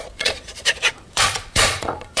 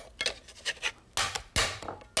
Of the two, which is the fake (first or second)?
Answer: first